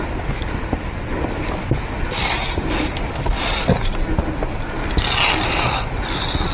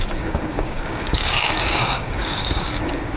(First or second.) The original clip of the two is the first